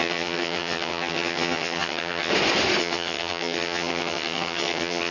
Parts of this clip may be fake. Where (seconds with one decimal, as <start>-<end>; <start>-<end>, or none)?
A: 0.0-2.3; 2.8-5.1